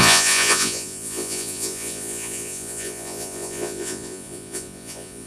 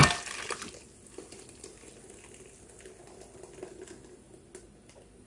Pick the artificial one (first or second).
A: first